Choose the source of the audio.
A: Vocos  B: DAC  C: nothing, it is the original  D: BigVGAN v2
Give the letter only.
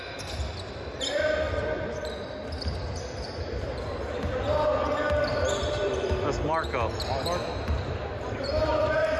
C